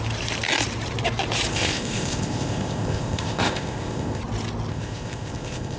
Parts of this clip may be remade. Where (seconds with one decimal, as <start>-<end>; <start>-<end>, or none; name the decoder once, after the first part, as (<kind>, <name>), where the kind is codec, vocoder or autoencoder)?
1.5-4.2 (codec, ZipCodec); 4.7-5.8